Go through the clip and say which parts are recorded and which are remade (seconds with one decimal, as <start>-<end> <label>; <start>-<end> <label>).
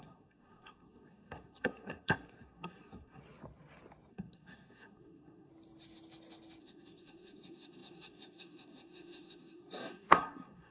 0.0-3.2 remade; 3.2-4.1 recorded; 4.1-5.5 remade; 5.5-6.6 recorded; 6.6-10.7 remade